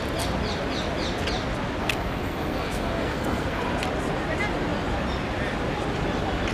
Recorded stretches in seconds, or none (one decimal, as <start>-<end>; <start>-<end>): 0.0-1.8; 3.6-6.5